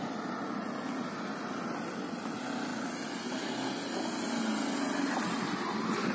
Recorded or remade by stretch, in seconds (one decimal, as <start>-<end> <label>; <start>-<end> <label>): 0.0-6.1 recorded